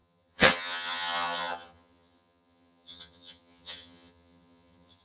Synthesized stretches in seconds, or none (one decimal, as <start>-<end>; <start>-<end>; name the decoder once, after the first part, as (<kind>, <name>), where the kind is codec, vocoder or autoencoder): 0.0-5.0 (vocoder, HiFi-GAN)